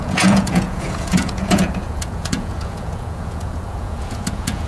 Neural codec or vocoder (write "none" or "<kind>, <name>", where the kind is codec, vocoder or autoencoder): vocoder, Vocos